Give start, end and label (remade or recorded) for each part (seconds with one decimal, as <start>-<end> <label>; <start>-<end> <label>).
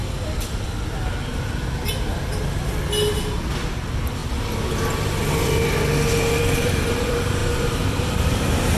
0.0-3.7 recorded; 3.7-4.2 remade; 4.2-6.6 recorded; 6.6-8.8 remade